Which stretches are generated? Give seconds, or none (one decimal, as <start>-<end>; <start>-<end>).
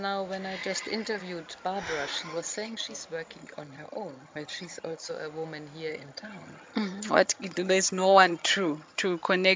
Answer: 0.6-1.2; 2.1-2.9; 3.4-5.1; 5.9-9.0